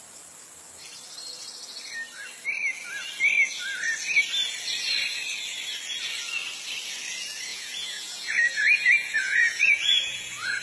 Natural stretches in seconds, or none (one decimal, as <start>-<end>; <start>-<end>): 0.0-7.5